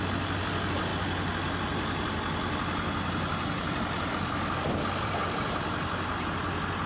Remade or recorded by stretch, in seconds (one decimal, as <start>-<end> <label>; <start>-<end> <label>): 0.0-6.9 recorded